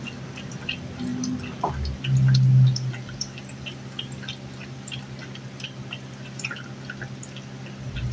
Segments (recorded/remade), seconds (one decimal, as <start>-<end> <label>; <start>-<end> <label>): 0.0-8.1 recorded